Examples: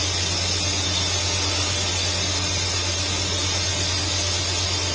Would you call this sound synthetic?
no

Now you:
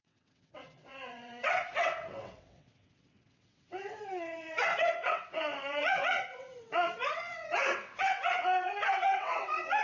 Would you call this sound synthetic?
yes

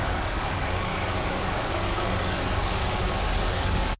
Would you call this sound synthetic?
yes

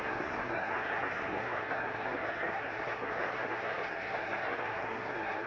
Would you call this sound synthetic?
yes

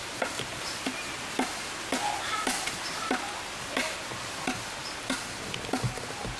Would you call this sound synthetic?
no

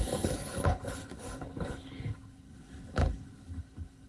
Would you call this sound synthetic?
yes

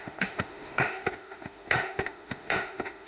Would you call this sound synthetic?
yes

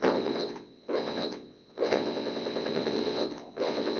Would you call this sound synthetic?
yes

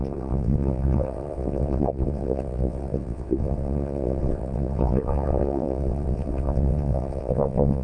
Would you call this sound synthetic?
yes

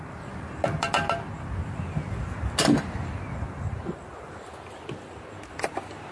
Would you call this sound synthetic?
no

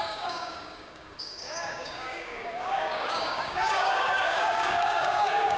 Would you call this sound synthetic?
yes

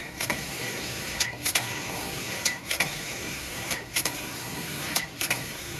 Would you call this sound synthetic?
yes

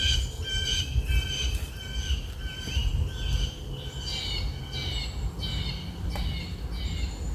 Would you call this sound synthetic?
no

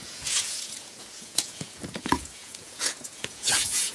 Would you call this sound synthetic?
yes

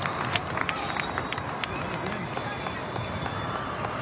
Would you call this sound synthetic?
no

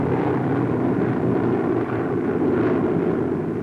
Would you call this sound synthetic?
yes